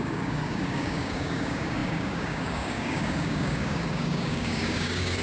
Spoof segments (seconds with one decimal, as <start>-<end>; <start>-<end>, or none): 0.0-5.2